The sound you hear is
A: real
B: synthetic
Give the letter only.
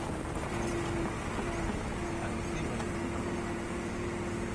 A